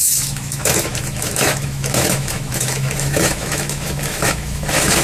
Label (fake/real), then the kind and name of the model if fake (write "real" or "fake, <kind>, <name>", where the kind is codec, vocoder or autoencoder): fake, autoencoder, DAC-VAE